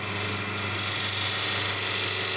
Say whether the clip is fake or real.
real